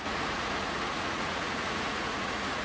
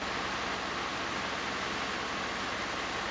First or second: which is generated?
first